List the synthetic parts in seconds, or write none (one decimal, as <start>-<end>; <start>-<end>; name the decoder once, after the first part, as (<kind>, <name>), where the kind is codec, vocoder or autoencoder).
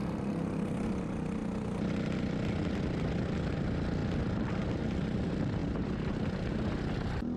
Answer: none